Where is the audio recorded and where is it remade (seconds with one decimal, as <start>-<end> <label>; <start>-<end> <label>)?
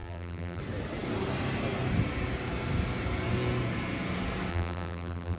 0.0-0.6 remade; 0.6-4.5 recorded; 4.5-5.4 remade